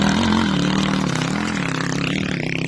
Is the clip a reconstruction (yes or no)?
no